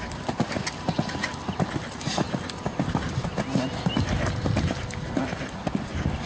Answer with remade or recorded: recorded